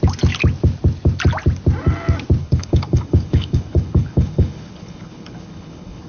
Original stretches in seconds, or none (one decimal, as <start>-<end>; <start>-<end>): 0.0-2.4